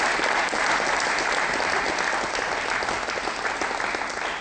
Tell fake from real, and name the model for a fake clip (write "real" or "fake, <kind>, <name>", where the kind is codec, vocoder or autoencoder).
real